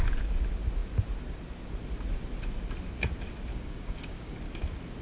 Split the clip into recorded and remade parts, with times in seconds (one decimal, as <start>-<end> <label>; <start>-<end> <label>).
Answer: 0.0-3.5 recorded; 3.5-4.4 remade; 4.4-5.0 recorded